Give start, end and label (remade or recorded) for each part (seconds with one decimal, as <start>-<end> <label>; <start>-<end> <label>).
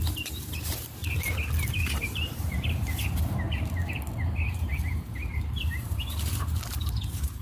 0.0-1.0 remade; 1.0-1.8 recorded; 1.8-3.8 remade; 3.8-4.5 recorded; 4.5-7.4 remade